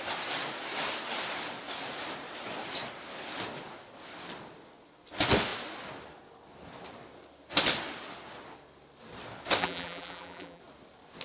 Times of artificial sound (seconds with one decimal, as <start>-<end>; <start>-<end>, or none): 9.6-10.6